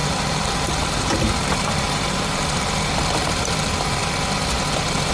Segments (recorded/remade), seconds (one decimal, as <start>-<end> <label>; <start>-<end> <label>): 0.0-4.0 remade; 4.0-5.1 recorded